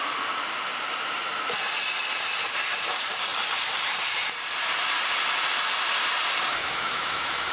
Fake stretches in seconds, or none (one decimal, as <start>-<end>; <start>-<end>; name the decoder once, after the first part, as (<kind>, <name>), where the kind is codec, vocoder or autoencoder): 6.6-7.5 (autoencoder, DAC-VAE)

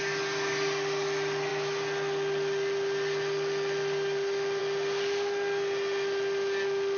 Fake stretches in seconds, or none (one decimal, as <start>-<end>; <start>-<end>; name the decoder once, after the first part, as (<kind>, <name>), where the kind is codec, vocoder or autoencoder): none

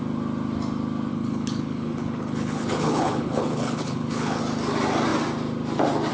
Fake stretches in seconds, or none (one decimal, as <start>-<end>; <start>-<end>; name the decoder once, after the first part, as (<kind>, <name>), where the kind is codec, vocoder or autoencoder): 1.1-4.4 (codec, HILCodec)

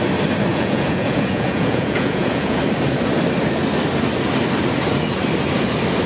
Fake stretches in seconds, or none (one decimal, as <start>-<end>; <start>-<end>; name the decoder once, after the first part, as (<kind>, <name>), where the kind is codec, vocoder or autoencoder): 0.5-2.6 (vocoder, Vocos)

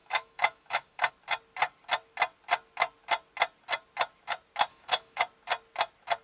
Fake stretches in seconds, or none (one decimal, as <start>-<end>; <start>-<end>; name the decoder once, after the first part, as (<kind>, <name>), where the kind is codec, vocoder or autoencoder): 0.0-1.1 (autoencoder, DAC-VAE); 4.7-5.2

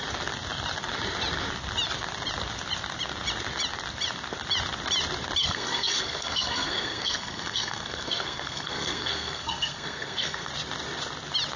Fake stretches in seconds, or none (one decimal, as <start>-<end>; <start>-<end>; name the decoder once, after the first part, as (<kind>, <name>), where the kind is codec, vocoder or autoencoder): 5.4-10.5 (codec, SNAC)